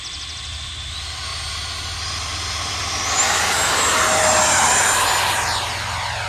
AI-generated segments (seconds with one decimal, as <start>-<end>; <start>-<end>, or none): none